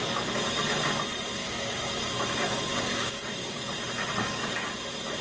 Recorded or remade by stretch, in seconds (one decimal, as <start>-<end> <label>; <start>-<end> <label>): 0.0-1.4 recorded; 1.4-1.9 remade; 1.9-2.7 recorded; 2.7-3.7 remade; 3.7-4.2 recorded; 4.2-4.7 remade; 4.7-5.2 recorded